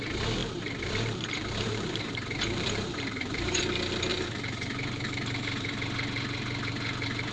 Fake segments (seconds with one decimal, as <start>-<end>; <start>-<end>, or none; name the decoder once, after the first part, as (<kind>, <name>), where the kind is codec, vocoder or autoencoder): 0.4-3.6 (vocoder, BigVGAN v2); 4.1-7.3